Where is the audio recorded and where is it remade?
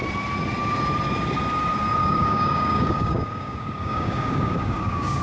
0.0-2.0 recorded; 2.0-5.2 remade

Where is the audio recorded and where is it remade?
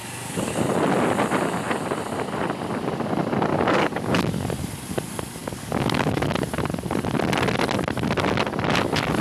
0.0-0.5 remade; 0.5-3.5 recorded; 3.5-4.2 remade; 4.2-5.4 recorded; 5.4-6.3 remade; 6.3-9.2 recorded